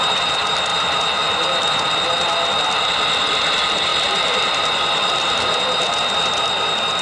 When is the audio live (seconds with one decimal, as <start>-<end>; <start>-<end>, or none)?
0.0-7.0